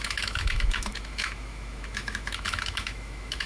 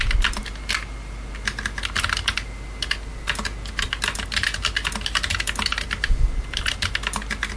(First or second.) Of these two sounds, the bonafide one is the second